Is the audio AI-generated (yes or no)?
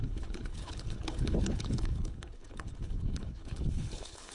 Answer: yes